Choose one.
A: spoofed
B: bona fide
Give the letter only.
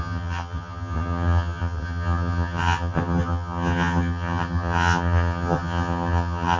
A